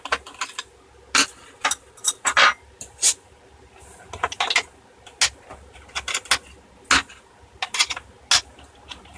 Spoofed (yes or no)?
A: no